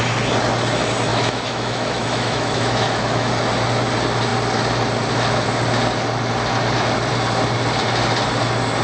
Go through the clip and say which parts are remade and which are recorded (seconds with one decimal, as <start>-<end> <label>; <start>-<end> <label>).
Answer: 0.0-1.1 recorded; 1.1-3.3 remade; 3.3-8.8 recorded